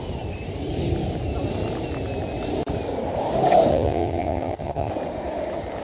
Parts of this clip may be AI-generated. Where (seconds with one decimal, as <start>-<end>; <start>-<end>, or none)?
3.7-4.9